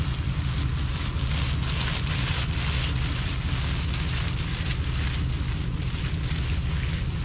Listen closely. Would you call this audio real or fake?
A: real